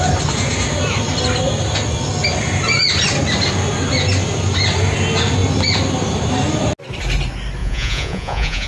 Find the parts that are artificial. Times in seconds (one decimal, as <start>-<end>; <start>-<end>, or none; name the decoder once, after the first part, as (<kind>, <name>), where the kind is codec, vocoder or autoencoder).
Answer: 7.6-8.7 (vocoder, Vocos)